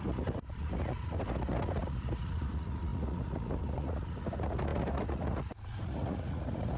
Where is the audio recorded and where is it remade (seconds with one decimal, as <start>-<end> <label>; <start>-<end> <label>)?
0.0-6.8 remade